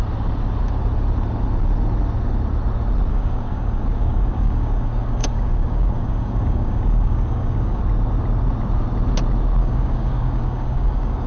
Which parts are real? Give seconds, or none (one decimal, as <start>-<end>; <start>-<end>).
0.0-3.1; 7.8-9.6

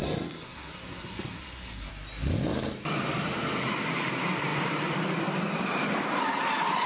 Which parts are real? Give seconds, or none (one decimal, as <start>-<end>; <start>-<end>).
1.9-6.9

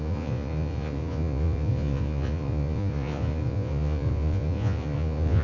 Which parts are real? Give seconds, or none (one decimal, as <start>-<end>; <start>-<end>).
none